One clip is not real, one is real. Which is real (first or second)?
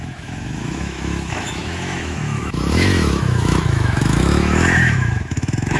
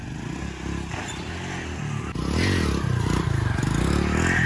second